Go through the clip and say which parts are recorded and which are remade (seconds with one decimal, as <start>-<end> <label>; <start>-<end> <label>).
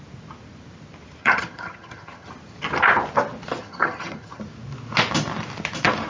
0.0-1.2 recorded; 1.2-2.3 remade; 2.3-3.6 recorded; 3.6-4.4 remade; 4.4-6.1 recorded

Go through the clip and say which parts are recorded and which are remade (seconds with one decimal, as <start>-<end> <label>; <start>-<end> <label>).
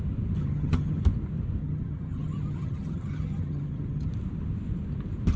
0.0-0.4 recorded; 0.4-1.0 remade; 1.0-1.6 recorded; 1.6-4.1 remade; 4.1-5.4 recorded